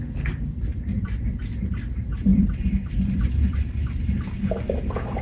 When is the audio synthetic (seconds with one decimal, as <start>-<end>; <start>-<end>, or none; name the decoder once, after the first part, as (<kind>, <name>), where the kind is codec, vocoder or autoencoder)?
2.3-5.2 (vocoder, BigVGAN v2)